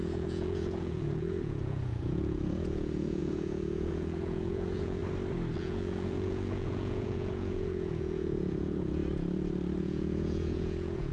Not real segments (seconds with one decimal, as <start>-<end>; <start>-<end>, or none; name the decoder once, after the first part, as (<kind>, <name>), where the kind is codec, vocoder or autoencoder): 0.0-5.0 (vocoder, Vocos); 5.6-9.0; 9.8-11.1